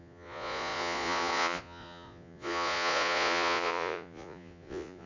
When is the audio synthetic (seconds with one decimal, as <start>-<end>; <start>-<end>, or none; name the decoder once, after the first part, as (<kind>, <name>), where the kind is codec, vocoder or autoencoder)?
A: 0.0-5.1 (vocoder, Vocos)